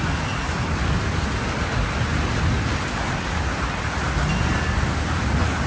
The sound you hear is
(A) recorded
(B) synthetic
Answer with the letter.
A